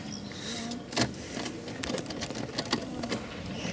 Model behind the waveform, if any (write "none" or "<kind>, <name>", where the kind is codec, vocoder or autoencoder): none